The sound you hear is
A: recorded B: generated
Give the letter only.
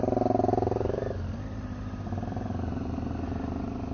A